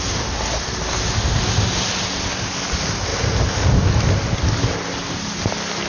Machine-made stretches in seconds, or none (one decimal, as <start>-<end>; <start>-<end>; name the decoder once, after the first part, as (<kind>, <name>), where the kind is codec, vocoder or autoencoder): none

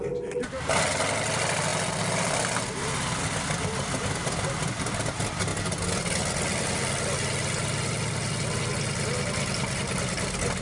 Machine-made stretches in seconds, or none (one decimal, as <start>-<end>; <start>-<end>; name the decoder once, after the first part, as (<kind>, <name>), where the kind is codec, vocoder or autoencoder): none

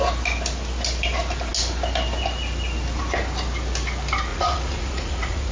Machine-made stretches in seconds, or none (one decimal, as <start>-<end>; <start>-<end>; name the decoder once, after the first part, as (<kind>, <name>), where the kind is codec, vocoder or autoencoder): 4.3-5.5 (vocoder, Vocos)

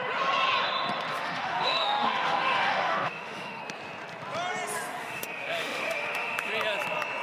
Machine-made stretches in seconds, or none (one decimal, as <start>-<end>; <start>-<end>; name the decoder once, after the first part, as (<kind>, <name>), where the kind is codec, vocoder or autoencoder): 1.1-3.6 (autoencoder, DAC-VAE); 5.0-6.5